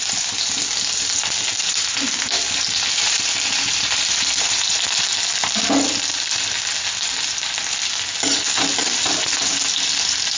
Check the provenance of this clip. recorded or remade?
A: recorded